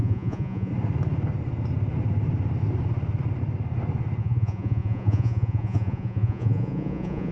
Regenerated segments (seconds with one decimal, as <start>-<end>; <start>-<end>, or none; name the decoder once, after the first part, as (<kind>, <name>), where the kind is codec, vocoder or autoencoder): 0.0-0.7 (vocoder, Vocos); 4.2-7.3